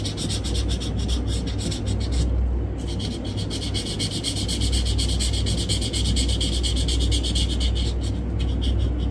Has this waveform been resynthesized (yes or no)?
no